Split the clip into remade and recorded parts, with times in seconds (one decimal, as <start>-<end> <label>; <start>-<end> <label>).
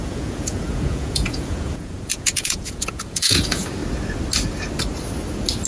0.0-3.8 remade; 3.8-5.7 recorded